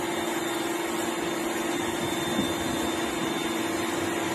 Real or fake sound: real